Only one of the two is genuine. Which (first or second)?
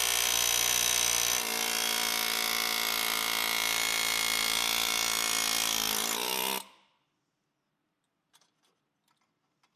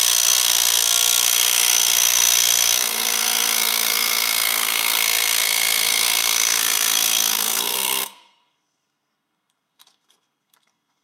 first